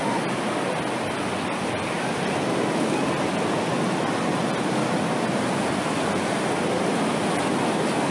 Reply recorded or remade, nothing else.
recorded